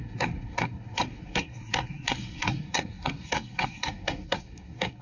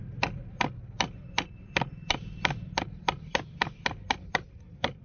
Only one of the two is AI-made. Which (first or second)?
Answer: first